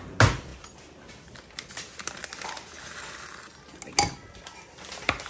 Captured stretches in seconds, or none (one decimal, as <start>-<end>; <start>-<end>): 0.0-5.3